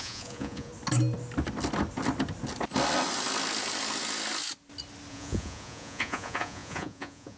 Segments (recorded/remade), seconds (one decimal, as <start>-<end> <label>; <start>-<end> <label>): 0.0-0.7 remade; 0.7-5.1 recorded; 5.1-7.4 remade